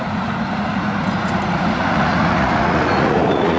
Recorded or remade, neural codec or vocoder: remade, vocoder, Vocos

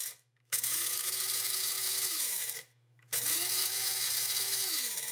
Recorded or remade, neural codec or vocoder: remade, autoencoder, DAC-VAE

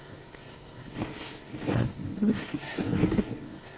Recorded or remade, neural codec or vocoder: remade, codec, SNAC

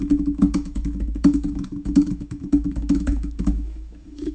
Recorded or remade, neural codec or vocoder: remade, autoencoder, DAC-VAE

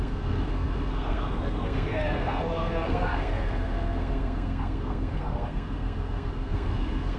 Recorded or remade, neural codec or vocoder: remade, codec, SNAC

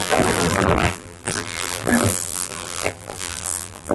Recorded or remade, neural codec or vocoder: remade, vocoder, BigVGAN v2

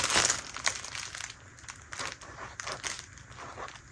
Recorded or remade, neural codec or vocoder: recorded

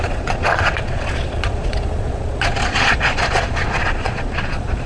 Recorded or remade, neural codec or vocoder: remade, vocoder, Vocos